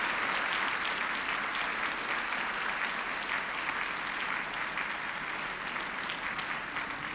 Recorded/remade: recorded